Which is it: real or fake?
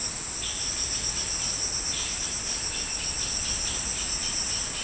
real